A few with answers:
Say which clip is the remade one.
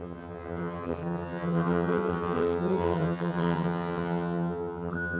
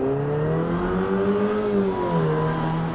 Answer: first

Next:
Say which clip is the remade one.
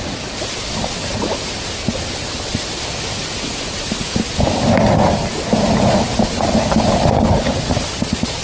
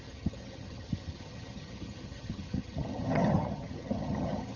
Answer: second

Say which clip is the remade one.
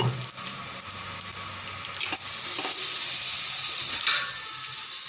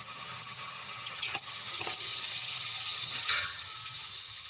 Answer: second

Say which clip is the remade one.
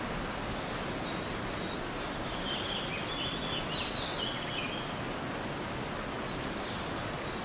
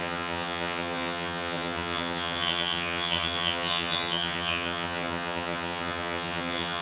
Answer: second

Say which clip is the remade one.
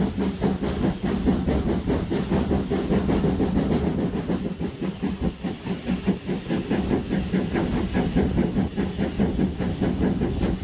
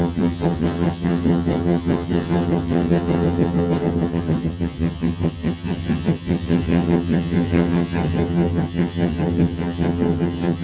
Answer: second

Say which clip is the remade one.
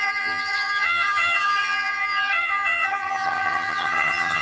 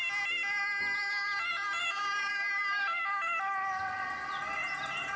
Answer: first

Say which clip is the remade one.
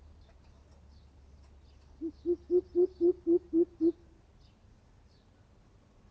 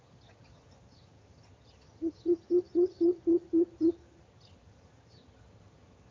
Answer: second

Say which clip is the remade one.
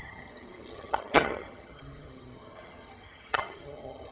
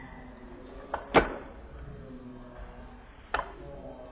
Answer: first